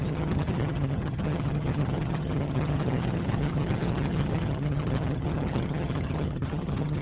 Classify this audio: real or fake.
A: fake